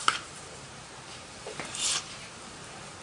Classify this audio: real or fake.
fake